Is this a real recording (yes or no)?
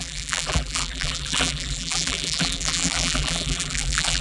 no